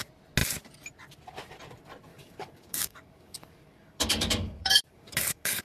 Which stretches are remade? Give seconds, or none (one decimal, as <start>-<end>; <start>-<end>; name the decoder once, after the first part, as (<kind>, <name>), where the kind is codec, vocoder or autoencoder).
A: 2.1-5.6 (codec, DAC)